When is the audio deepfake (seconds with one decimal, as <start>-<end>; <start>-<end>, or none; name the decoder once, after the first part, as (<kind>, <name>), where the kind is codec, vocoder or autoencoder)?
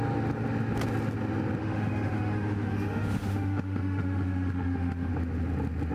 1.6-5.1 (autoencoder, DAC-VAE)